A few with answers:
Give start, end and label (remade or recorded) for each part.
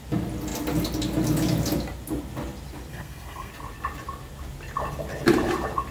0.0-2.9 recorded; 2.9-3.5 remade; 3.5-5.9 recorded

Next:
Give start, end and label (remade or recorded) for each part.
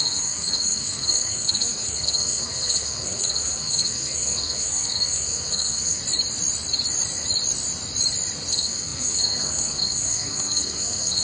0.0-6.0 remade; 6.0-8.5 recorded; 8.5-11.2 remade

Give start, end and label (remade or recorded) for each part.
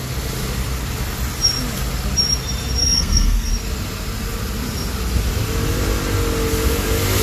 0.0-2.8 recorded; 2.8-3.5 remade; 3.5-7.2 recorded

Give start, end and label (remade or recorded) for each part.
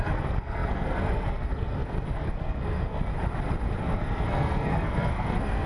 0.0-3.1 remade; 3.1-3.8 recorded; 3.8-5.7 remade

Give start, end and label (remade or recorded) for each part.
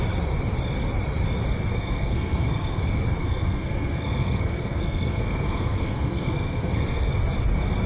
0.0-1.7 recorded; 1.7-2.8 remade; 2.8-3.2 recorded; 3.2-7.1 remade; 7.1-7.9 recorded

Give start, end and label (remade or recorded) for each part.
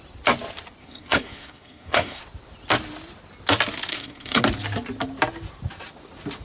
0.0-0.8 recorded; 0.8-2.2 remade; 2.2-3.9 recorded; 3.9-4.4 remade; 4.4-6.4 recorded